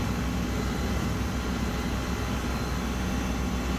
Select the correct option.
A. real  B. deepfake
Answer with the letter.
A